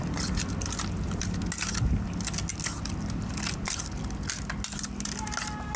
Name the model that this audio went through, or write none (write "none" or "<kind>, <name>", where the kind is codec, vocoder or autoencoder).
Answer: none